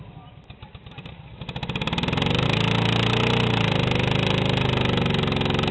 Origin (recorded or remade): recorded